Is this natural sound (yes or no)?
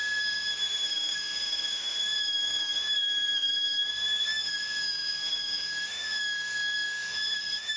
no